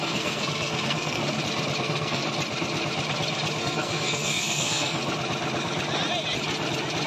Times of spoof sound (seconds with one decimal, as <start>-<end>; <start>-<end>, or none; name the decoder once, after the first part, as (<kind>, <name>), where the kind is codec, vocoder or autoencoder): 0.0-1.2 (codec, SNAC); 1.8-2.2; 3.6-5.0

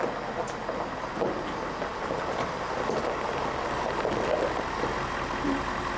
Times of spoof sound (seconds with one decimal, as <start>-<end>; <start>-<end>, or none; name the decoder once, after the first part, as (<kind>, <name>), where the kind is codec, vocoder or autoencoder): none

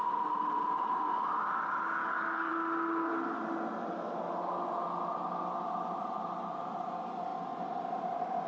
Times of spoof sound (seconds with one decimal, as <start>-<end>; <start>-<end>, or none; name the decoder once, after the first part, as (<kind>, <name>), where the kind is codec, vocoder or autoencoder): 2.0-2.5 (codec, DAC)

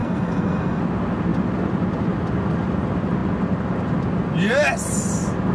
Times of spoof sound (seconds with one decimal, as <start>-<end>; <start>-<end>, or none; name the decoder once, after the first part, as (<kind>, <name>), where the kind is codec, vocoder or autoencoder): 0.0-0.8 (codec, SNAC)

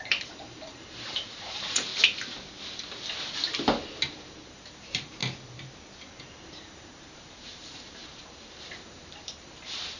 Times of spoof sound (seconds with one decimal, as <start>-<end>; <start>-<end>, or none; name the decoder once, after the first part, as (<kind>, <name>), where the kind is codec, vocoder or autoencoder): 0.0-1.9 (vocoder, BigVGAN v2); 4.5-5.2; 6.6-10.0

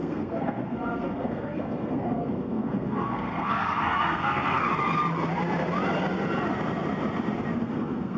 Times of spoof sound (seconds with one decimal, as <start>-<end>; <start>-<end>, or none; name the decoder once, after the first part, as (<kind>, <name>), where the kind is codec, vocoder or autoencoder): 0.0-4.7 (codec, SNAC); 7.6-8.2

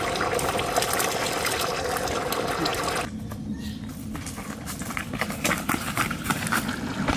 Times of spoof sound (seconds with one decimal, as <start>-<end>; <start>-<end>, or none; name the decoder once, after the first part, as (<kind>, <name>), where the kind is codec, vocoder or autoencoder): none

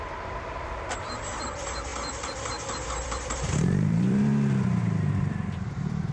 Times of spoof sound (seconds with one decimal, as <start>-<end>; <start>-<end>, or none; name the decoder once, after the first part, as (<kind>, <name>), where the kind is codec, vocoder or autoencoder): 0.0-1.9 (vocoder, BigVGAN v2); 2.9-4.3; 5.1-6.1